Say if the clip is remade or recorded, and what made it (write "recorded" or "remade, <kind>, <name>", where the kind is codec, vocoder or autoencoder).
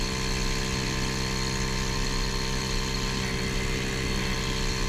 recorded